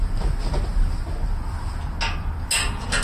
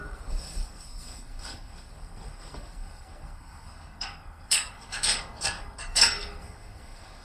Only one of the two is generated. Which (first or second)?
second